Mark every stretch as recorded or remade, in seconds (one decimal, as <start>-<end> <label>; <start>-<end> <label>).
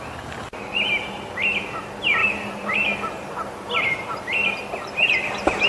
0.0-2.2 recorded; 2.2-5.7 remade